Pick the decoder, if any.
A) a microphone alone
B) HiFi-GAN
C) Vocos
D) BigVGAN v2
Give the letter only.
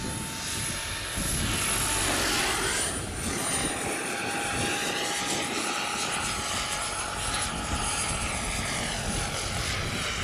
A